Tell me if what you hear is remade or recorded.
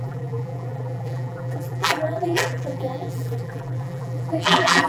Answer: remade